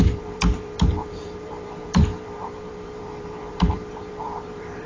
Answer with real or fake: fake